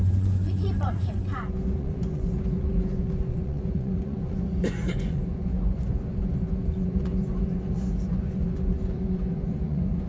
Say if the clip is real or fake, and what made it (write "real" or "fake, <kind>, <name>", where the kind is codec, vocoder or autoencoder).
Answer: fake, vocoder, Vocos